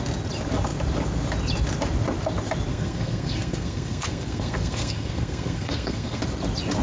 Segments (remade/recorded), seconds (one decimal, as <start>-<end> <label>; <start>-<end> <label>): 0.0-2.7 recorded; 2.7-6.2 remade; 6.2-6.8 recorded